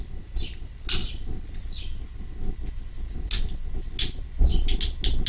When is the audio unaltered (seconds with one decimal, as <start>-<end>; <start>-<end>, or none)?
0.0-5.3